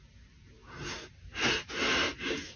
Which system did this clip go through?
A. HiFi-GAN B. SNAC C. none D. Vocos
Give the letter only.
C